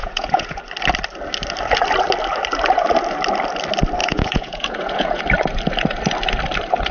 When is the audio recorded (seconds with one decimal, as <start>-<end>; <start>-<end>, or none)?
0.6-4.0; 5.2-6.9

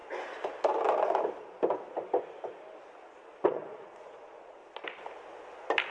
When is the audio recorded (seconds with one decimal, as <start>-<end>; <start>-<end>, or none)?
0.0-3.5; 4.6-5.9

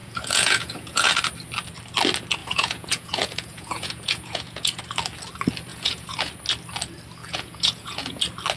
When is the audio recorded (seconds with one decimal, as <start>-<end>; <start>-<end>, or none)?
1.1-2.4; 4.8-5.7; 6.3-7.2; 8.2-8.6

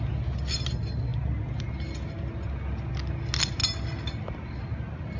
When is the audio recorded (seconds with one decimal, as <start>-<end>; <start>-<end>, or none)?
0.0-5.2

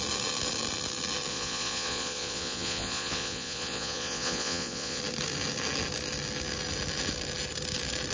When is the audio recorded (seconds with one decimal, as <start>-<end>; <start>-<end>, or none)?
0.0-1.3; 5.0-8.1